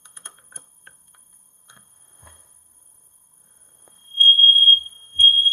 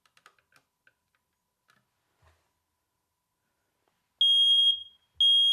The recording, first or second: second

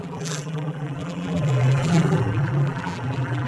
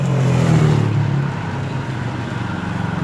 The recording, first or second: second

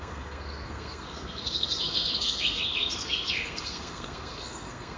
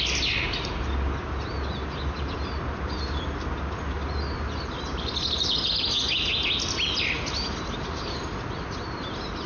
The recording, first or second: second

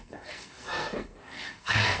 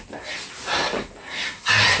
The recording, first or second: second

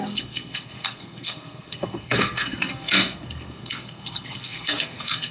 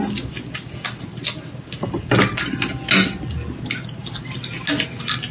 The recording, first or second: second